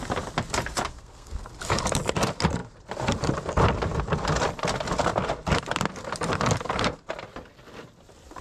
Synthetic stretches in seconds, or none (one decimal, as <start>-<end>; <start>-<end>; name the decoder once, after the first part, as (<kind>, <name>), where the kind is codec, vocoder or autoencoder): 0.9-1.5 (codec, SNAC)